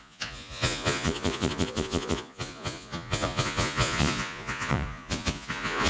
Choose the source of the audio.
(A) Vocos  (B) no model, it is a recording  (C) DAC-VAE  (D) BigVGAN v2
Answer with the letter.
A